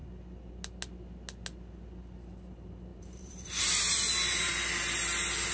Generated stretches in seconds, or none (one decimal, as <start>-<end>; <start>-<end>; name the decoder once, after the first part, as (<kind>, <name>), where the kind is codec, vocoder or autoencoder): 2.9-4.5 (vocoder, BigVGAN v2)